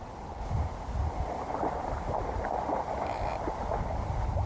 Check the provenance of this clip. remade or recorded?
recorded